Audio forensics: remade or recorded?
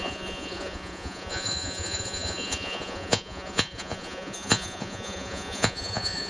remade